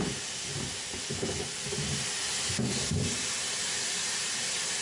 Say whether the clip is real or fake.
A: real